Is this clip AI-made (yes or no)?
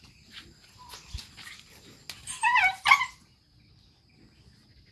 no